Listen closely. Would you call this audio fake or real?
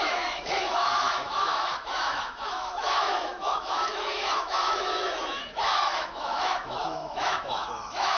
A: fake